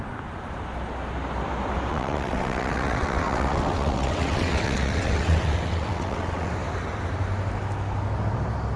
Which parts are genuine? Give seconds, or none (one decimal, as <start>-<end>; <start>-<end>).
0.0-1.9; 6.5-8.8